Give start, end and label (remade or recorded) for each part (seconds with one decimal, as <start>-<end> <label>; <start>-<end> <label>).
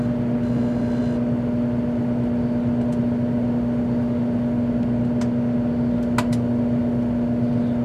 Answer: 0.0-7.8 recorded